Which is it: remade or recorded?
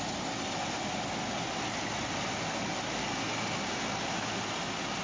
recorded